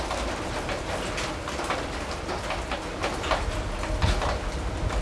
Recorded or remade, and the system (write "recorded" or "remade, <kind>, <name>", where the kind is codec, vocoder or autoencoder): recorded